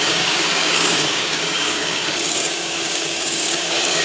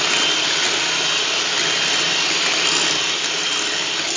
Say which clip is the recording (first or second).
second